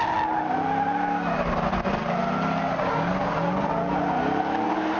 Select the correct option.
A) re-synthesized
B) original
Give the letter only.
B